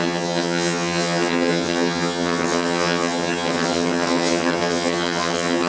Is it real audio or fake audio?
fake